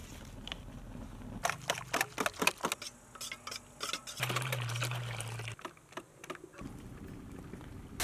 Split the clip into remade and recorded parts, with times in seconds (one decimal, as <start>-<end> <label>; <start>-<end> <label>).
0.0-8.0 recorded

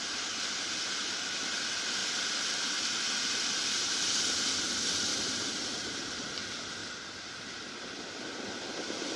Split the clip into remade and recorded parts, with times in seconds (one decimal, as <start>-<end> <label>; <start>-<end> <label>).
0.0-5.1 recorded; 5.1-6.1 remade; 6.1-6.8 recorded; 6.8-7.3 remade; 7.3-9.2 recorded

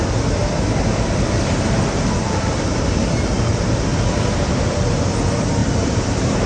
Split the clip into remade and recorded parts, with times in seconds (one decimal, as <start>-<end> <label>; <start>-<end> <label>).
0.0-0.4 recorded; 0.4-1.4 remade; 1.4-3.9 recorded; 3.9-4.9 remade; 4.9-5.6 recorded; 5.6-6.5 remade